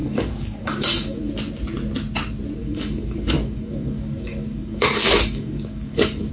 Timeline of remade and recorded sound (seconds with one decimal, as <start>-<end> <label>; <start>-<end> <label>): 0.0-1.3 remade; 1.3-2.6 recorded; 2.6-6.3 remade